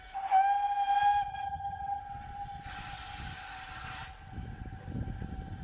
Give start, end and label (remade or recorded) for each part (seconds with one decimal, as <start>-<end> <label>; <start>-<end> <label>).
0.0-1.3 recorded; 1.3-2.0 remade; 2.0-5.6 recorded